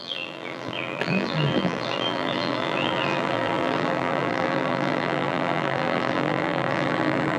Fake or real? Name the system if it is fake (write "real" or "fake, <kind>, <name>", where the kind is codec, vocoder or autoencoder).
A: fake, vocoder, BigVGAN v2